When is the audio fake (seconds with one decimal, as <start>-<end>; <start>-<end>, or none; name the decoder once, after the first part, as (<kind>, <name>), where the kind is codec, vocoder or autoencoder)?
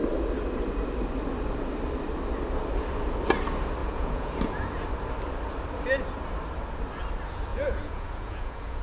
3.8-4.7 (vocoder, Vocos); 7.5-8.8